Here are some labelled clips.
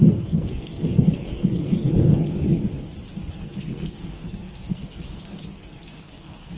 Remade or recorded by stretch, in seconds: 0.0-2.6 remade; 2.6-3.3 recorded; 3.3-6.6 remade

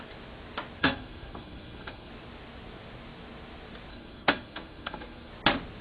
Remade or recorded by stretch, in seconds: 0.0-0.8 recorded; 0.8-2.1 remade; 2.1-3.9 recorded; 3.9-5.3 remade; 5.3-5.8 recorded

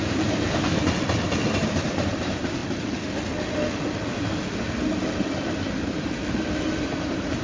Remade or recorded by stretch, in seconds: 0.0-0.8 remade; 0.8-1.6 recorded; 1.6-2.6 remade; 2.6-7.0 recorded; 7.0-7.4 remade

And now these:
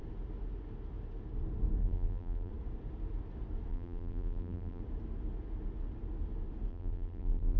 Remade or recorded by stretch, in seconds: 0.0-1.8 recorded; 1.8-2.5 remade; 2.5-3.7 recorded; 3.7-4.8 remade; 4.8-6.7 recorded; 6.7-7.6 remade

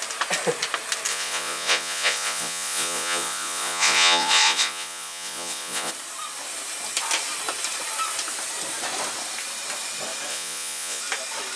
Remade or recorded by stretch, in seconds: 0.0-1.1 recorded; 1.1-5.9 remade; 5.9-10.3 recorded; 10.3-11.0 remade; 11.0-11.6 recorded